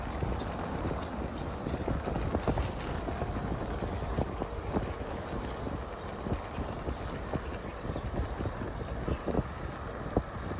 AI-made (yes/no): no